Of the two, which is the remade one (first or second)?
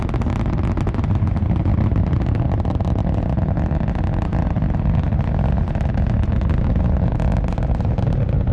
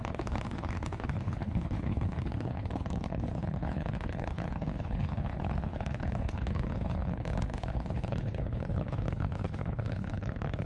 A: second